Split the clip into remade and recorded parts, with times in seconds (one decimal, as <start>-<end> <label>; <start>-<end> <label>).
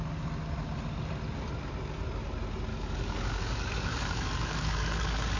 0.0-2.7 recorded; 2.7-5.4 remade